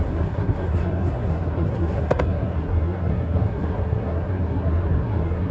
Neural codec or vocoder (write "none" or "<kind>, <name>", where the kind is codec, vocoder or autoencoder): codec, SNAC